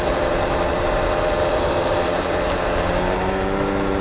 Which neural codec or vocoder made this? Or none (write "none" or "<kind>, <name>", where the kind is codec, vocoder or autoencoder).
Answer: vocoder, BigVGAN v2